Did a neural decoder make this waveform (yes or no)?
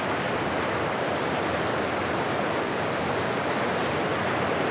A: no